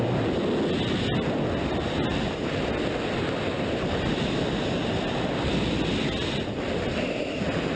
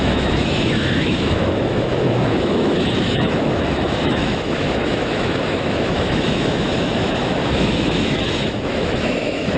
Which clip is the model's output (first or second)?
second